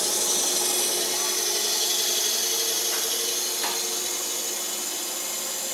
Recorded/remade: recorded